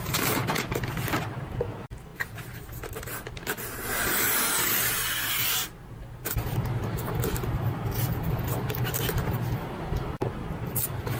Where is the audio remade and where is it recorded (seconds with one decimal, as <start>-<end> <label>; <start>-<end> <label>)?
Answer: 0.0-11.2 recorded